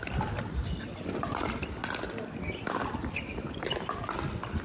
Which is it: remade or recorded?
recorded